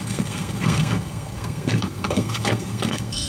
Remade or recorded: remade